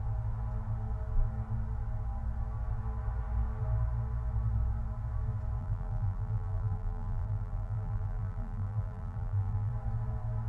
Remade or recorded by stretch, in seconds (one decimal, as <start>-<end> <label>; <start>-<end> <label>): 0.0-5.6 recorded; 5.6-9.7 remade; 9.7-10.5 recorded